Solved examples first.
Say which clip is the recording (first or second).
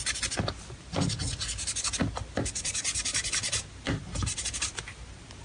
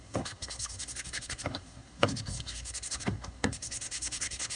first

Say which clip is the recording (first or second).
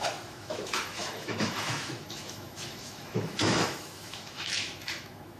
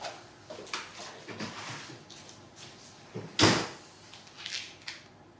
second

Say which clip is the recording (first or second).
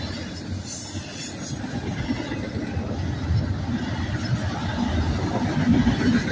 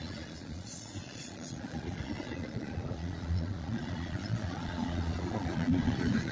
first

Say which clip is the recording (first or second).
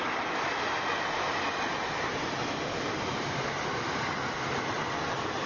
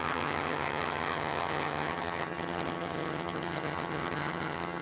first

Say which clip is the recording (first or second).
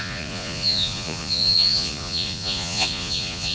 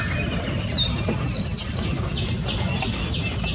second